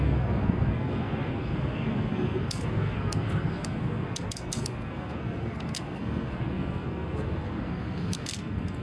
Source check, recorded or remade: remade